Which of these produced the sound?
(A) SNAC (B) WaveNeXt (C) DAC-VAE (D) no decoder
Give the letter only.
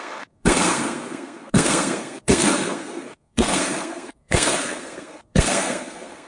A